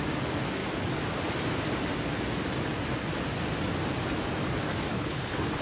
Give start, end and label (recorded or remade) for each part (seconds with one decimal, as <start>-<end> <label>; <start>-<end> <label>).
0.0-4.9 recorded; 4.9-5.6 remade